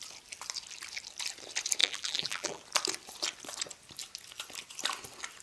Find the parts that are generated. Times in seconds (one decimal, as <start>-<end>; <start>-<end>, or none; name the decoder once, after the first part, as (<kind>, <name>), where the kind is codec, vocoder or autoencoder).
1.8-2.6 (vocoder, BigVGAN v2)